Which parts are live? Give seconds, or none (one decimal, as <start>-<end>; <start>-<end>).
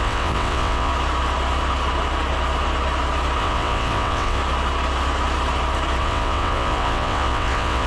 0.9-3.4; 4.4-6.0